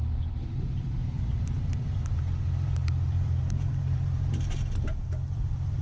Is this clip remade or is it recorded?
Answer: remade